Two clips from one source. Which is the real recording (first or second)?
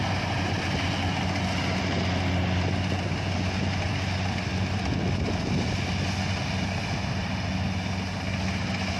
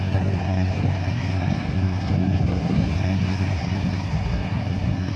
first